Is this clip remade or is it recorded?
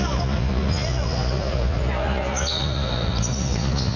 remade